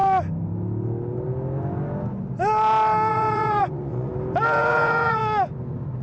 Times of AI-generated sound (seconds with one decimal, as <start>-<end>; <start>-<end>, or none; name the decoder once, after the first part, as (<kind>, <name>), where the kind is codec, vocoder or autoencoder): 3.1-4.1 (vocoder, Vocos); 4.6-5.2